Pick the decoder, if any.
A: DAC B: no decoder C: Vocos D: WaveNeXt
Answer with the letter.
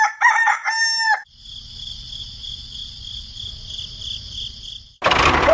B